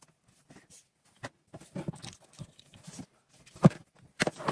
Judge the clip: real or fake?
real